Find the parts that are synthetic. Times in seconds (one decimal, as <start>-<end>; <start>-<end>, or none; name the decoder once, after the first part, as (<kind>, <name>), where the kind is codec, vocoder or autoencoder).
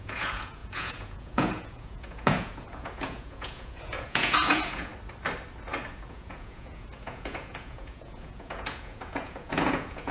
0.0-4.9 (vocoder, Vocos); 6.1-10.1